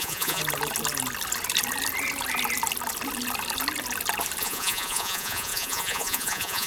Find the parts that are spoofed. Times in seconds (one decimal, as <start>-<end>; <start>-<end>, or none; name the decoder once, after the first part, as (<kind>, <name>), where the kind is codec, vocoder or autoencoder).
0.0-0.4 (vocoder, Vocos); 4.4-6.7